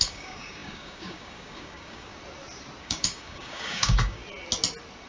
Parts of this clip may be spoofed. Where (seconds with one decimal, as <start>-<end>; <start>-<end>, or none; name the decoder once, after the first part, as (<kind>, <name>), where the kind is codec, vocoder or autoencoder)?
0.0-2.1 (codec, DAC); 2.8-4.2